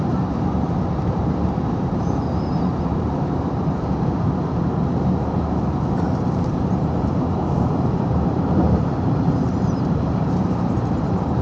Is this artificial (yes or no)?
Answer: yes